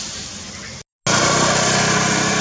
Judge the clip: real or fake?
real